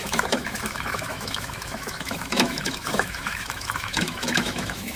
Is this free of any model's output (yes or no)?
no